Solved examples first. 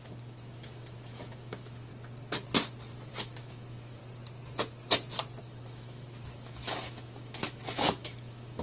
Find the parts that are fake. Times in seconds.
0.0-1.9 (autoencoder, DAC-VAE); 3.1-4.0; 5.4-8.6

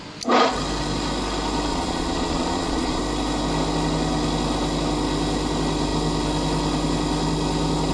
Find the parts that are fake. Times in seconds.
1.7-3.0 (vocoder, Vocos)

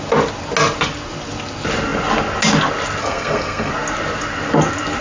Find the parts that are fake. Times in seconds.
3.0-3.7 (codec, SNAC)

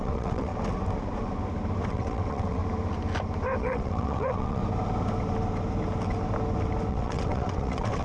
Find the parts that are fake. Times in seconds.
0.0-0.5 (vocoder, WaveNeXt); 1.9-2.6; 3.6-4.6; 6.9-8.0